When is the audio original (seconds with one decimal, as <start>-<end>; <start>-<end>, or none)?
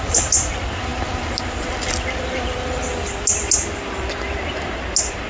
0.0-5.3